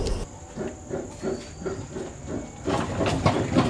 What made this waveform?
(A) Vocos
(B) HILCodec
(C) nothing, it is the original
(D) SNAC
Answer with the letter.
C